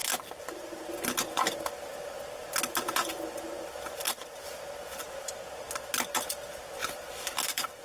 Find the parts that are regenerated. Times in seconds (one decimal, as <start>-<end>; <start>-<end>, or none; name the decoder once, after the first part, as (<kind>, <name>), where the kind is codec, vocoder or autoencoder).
4.0-4.6 (vocoder, BigVGAN v2); 6.8-7.8